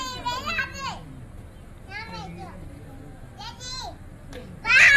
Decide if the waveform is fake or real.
real